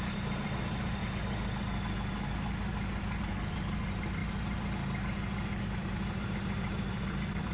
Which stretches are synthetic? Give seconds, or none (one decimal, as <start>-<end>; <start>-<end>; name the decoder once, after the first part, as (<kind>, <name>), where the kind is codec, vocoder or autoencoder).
0.0-1.0 (vocoder, BigVGAN v2); 3.5-4.2; 5.6-7.5